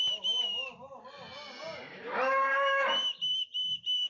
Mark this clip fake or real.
real